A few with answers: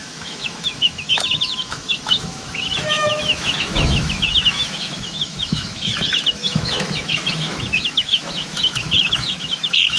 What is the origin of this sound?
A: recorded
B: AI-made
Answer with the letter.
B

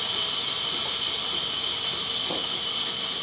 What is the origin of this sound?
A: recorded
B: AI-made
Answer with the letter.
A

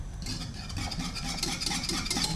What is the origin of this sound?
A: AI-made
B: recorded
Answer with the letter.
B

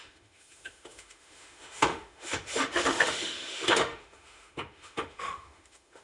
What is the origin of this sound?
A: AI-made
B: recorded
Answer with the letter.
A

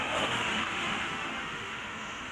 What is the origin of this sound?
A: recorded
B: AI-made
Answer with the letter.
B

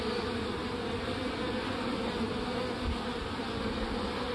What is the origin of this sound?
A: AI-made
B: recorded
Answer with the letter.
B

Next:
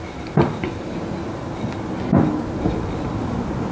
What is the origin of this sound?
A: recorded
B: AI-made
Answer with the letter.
A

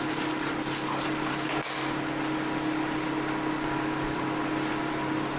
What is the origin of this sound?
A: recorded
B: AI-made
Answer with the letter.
A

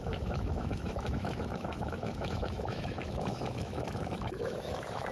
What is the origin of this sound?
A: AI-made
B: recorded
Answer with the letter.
A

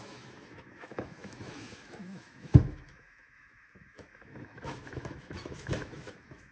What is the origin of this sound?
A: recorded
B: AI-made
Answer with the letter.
B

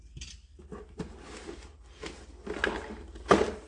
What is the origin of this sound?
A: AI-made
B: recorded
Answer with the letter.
B